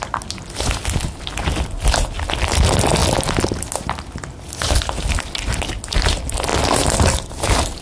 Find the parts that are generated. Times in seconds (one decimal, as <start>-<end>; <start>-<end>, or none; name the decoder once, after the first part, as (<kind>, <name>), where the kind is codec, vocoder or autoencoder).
none